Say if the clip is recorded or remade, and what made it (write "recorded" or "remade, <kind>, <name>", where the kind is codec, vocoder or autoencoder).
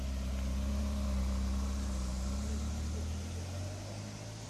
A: recorded